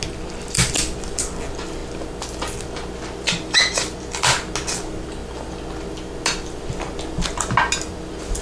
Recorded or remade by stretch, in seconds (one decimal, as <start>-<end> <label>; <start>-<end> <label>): 0.0-8.4 recorded